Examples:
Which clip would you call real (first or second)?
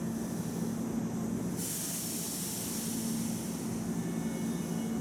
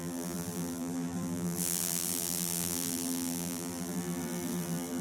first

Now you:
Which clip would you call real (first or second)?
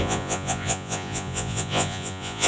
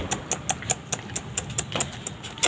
second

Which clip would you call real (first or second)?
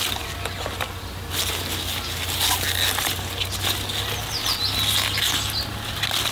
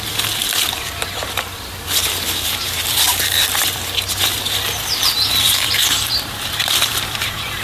first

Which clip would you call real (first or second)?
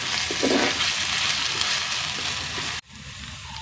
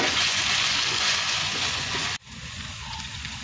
first